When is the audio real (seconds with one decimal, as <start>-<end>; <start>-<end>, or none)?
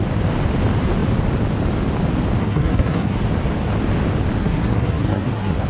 0.0-2.4; 3.2-4.4